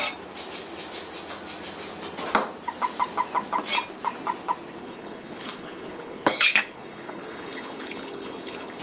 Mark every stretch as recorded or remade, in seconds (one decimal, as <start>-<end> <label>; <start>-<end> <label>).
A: 0.0-4.8 recorded; 4.8-8.8 remade